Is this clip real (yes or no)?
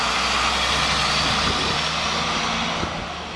yes